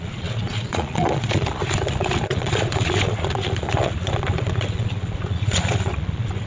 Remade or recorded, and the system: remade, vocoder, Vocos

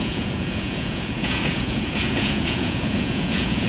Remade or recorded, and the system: remade, vocoder, Vocos